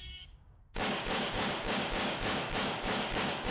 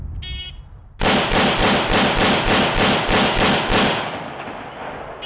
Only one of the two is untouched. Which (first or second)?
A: second